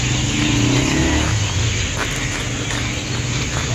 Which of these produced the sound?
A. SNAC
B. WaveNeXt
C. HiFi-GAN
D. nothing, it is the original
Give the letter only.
D